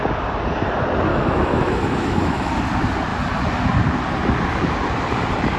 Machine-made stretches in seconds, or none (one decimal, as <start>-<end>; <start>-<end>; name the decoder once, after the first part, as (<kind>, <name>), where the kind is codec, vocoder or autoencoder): 1.1-2.5 (autoencoder, DAC-VAE)